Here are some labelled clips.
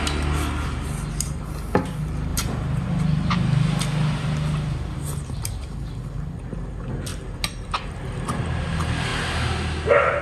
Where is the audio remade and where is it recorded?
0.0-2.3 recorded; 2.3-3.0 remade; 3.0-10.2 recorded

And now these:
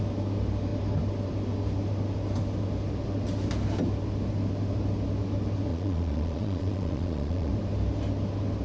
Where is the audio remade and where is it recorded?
0.0-5.7 recorded; 5.7-7.5 remade; 7.5-8.6 recorded

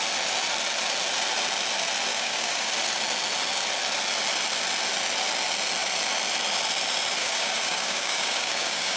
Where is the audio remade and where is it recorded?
0.0-2.1 recorded; 2.1-2.7 remade; 2.7-7.2 recorded; 7.2-9.0 remade

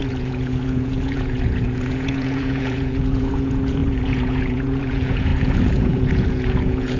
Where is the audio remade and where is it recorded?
0.0-7.0 remade